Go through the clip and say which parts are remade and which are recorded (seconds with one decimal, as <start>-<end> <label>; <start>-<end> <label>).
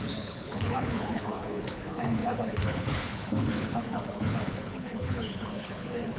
0.0-6.2 remade